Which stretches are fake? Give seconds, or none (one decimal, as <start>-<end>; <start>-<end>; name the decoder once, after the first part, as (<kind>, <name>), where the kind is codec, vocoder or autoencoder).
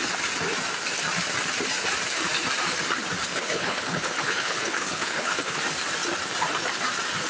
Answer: 3.3-5.6 (codec, HILCodec)